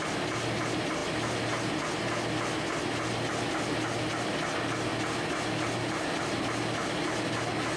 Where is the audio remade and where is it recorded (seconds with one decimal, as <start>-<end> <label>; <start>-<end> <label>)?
0.0-7.8 recorded